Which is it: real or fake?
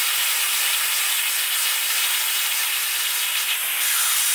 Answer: real